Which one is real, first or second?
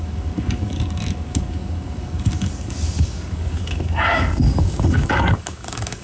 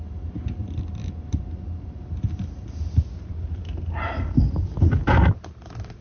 second